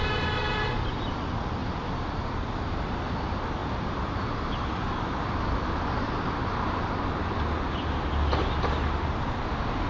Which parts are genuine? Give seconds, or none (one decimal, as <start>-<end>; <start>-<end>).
0.0-9.9